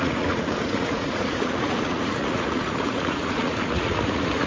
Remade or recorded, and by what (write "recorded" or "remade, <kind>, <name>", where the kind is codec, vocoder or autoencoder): remade, vocoder, Vocos